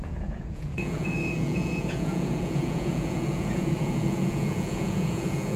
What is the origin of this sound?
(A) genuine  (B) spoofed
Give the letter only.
B